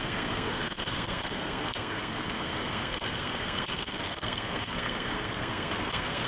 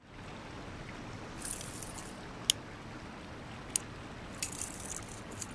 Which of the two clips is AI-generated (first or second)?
first